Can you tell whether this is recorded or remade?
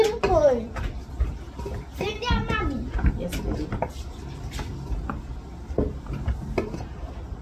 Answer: recorded